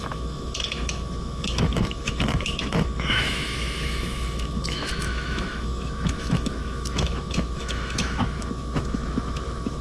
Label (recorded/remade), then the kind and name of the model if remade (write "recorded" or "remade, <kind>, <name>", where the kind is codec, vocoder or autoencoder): remade, autoencoder, DAC-VAE